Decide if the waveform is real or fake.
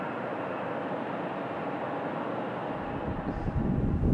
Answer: real